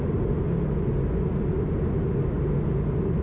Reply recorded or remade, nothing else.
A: recorded